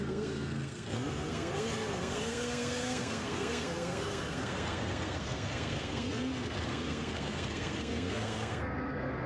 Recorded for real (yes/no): no